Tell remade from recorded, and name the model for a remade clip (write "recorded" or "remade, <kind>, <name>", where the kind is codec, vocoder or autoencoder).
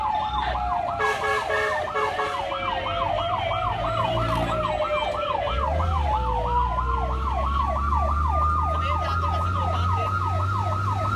recorded